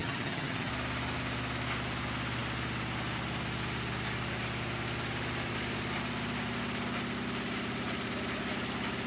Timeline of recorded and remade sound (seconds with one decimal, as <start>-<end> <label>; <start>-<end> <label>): 0.0-0.7 remade; 0.7-9.1 recorded